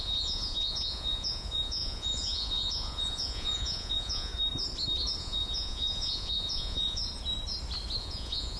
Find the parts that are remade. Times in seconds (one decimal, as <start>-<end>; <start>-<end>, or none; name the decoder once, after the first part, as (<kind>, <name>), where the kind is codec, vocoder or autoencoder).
0.0-4.3 (vocoder, Vocos); 5.2-7.0; 8.0-8.6